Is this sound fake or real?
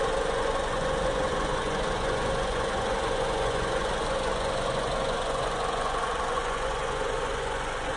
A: fake